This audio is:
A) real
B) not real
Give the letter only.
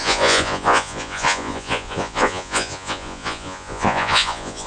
B